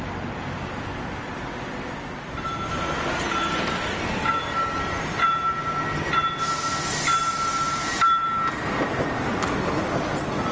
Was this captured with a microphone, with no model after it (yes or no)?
yes